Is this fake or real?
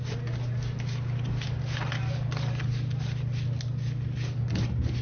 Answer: real